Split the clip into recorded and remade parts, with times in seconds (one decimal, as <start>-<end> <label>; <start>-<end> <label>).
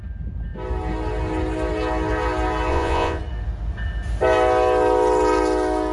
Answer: 0.0-2.7 recorded; 2.7-3.2 remade; 3.2-5.9 recorded